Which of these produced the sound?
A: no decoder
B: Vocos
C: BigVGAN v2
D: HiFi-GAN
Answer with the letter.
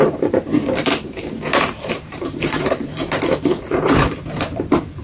C